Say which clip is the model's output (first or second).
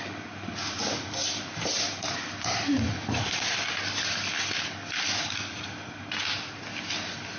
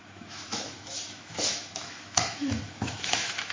second